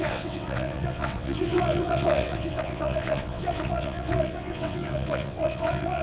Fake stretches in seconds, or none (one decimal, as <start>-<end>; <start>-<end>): 0.0-6.0